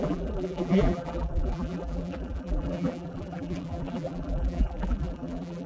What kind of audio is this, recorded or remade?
remade